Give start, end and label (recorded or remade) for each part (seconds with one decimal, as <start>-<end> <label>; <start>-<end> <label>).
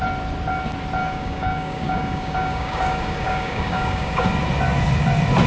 0.0-1.0 recorded; 1.0-4.3 remade; 4.3-5.5 recorded